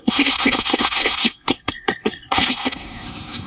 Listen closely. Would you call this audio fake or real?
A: fake